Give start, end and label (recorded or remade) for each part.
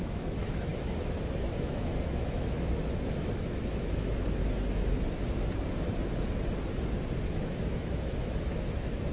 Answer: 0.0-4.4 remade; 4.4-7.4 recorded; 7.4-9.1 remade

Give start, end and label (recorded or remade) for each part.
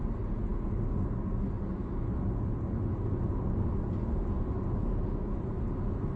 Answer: 0.0-6.2 recorded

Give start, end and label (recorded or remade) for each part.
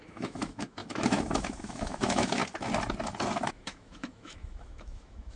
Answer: 0.0-2.4 remade; 2.4-3.5 recorded; 3.5-5.4 remade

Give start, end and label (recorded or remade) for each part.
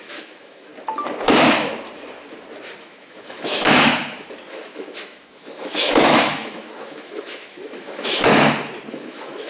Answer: 0.0-0.7 remade; 0.7-2.8 recorded; 2.8-3.9 remade; 3.9-4.5 recorded; 4.5-8.3 remade; 8.3-8.9 recorded; 8.9-9.5 remade